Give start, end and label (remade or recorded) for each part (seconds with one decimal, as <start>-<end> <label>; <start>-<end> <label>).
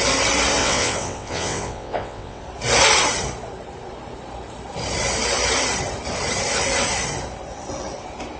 0.0-0.6 recorded; 0.6-2.4 remade; 2.4-8.4 recorded